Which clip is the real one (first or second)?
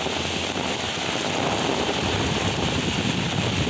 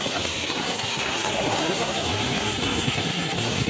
first